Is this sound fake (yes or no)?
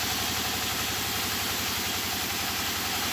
no